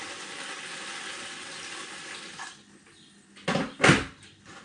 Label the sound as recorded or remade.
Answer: recorded